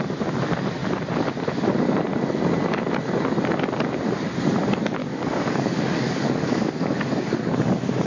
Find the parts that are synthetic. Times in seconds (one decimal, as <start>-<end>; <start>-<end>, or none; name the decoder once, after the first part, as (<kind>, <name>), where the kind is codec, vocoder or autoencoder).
5.0-8.1 (codec, DAC)